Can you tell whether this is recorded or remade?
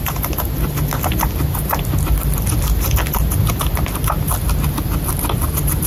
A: recorded